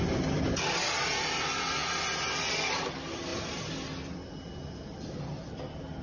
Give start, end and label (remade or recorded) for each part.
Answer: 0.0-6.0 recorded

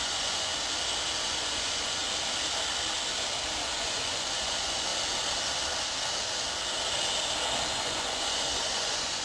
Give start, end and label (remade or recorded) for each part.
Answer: 0.0-0.5 remade; 0.5-1.2 recorded; 1.2-2.0 remade; 2.0-3.6 recorded; 3.6-4.9 remade; 4.9-7.7 recorded; 7.7-9.2 remade

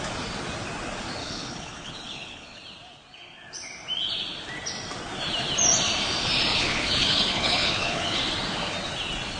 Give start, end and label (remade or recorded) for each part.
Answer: 0.0-1.2 recorded; 1.2-2.6 remade; 2.6-6.5 recorded; 6.5-8.2 remade; 8.2-9.4 recorded

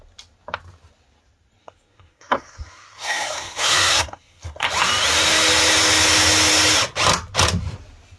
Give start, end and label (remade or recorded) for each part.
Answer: 0.0-1.6 recorded; 1.6-4.7 remade; 4.7-8.2 recorded

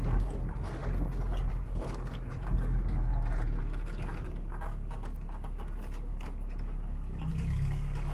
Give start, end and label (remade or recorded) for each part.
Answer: 0.0-0.8 remade; 0.8-1.5 recorded; 1.5-3.1 remade; 3.1-3.6 recorded; 3.6-8.1 remade

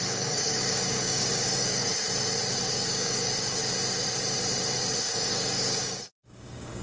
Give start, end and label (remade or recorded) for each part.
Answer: 0.0-1.9 remade; 1.9-2.6 recorded; 2.6-3.6 remade; 3.6-4.9 recorded; 4.9-6.8 remade